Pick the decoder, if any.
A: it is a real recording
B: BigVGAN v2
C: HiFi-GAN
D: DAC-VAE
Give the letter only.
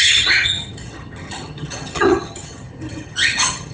C